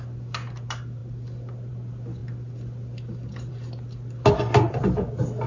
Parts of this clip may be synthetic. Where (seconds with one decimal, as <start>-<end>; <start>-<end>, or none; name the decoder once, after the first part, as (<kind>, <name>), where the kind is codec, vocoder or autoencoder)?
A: none